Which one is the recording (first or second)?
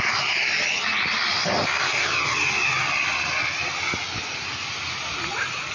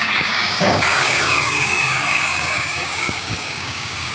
first